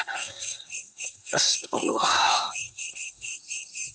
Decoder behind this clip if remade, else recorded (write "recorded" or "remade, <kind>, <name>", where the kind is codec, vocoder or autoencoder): remade, codec, SNAC